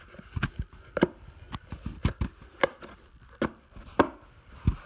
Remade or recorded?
recorded